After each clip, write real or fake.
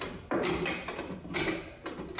real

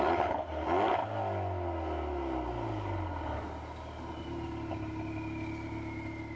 real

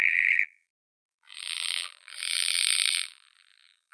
fake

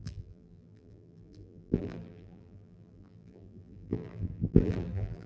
fake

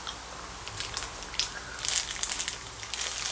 real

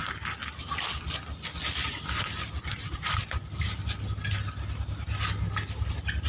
real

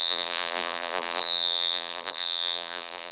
fake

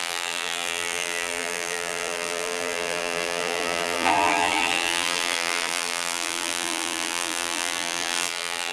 fake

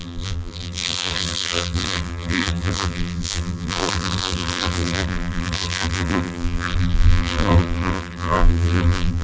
fake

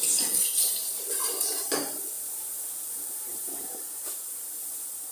fake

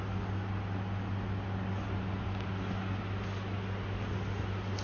real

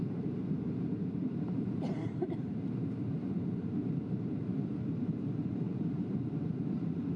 fake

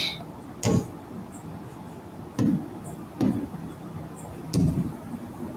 real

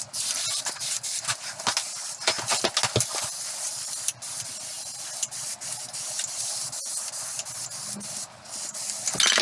real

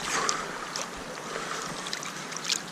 real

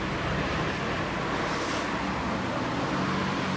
real